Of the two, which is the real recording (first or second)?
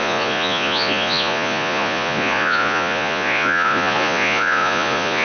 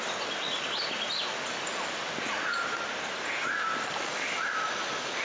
second